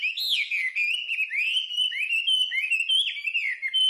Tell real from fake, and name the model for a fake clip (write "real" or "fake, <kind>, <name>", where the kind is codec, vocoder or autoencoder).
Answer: real